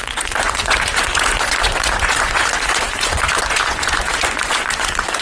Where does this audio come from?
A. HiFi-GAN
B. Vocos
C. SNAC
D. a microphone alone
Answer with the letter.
B